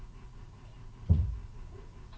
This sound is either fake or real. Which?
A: fake